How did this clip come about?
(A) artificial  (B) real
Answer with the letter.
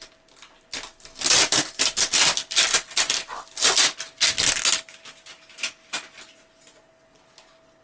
B